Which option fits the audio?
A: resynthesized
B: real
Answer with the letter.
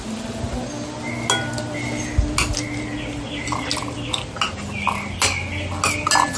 B